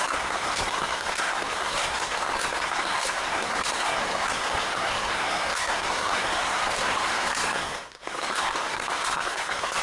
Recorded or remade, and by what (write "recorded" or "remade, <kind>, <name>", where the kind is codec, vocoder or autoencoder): remade, codec, SNAC